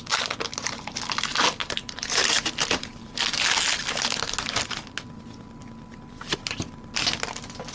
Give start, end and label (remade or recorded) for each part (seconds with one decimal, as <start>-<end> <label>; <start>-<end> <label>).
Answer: 0.0-1.6 recorded; 1.6-3.1 remade; 3.1-7.7 recorded